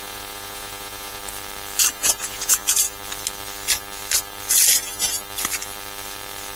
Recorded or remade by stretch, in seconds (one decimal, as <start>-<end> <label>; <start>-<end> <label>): 0.0-1.2 remade; 1.2-1.9 recorded; 1.9-2.6 remade; 2.6-6.6 recorded